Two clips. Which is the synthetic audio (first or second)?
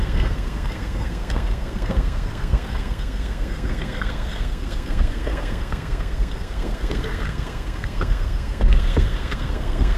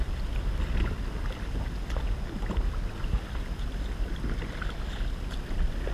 first